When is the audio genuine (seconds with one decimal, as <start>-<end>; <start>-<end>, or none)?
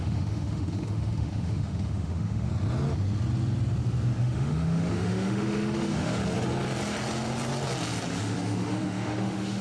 2.5-4.2; 6.2-8.2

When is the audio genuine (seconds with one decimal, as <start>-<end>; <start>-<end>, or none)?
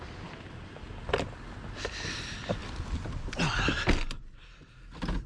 0.0-5.3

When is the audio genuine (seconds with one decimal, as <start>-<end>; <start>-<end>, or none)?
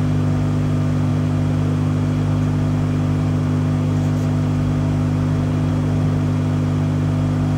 0.0-7.6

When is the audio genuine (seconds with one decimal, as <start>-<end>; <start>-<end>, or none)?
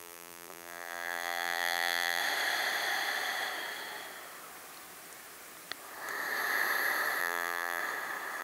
2.2-7.2; 7.8-8.4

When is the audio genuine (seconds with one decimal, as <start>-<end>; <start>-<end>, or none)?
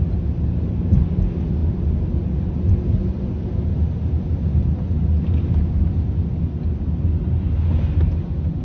0.0-8.6